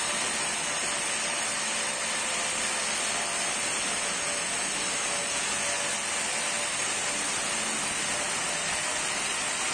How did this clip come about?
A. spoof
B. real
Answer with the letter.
B